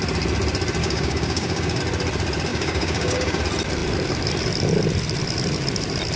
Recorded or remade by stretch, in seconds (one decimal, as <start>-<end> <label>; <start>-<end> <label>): 0.0-0.8 recorded; 0.8-1.8 remade; 1.8-2.5 recorded; 2.5-3.4 remade; 3.4-6.2 recorded